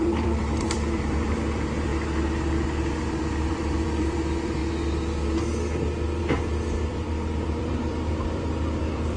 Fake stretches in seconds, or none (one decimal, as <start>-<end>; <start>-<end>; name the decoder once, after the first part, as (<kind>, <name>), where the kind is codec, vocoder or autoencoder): 0.0-1.9 (vocoder, BigVGAN v2); 2.9-4.6; 6.2-9.2